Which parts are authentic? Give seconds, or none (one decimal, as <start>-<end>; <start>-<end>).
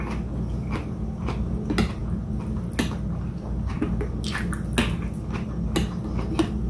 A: 0.0-6.7